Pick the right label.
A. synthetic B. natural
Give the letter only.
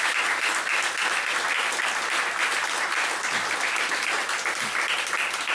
B